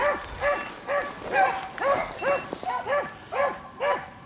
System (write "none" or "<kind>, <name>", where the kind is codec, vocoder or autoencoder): none